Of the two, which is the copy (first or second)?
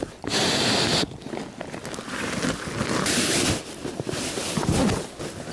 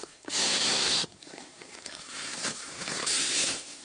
second